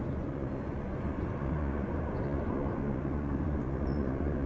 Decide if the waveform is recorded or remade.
remade